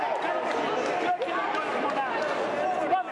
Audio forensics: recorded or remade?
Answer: recorded